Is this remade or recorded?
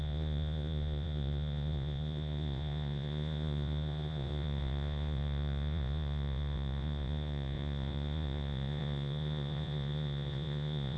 remade